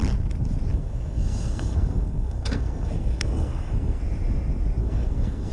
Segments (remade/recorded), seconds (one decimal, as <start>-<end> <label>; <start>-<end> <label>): 0.0-0.7 recorded; 0.7-4.0 remade; 4.0-4.8 recorded; 4.8-5.5 remade